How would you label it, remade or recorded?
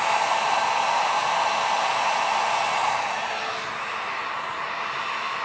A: recorded